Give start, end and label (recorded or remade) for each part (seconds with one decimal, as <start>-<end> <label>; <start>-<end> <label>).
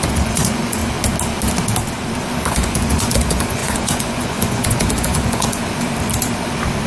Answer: 0.0-0.8 remade; 0.8-2.5 recorded; 2.5-5.6 remade; 5.6-6.9 recorded